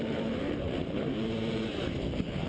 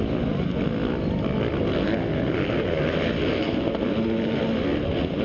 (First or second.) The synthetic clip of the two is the first